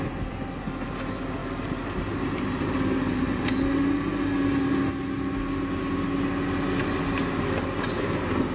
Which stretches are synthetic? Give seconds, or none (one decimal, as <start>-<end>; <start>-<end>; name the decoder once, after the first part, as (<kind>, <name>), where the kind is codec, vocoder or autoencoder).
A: none